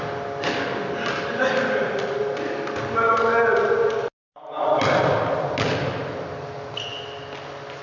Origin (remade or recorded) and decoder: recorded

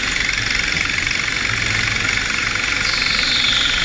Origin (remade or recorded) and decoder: recorded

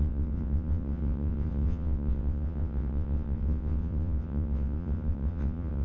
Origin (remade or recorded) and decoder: remade, vocoder, WaveNeXt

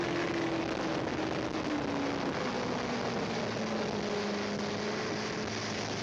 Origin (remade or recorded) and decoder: recorded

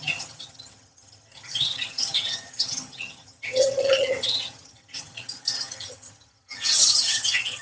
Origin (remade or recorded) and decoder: remade, vocoder, HiFi-GAN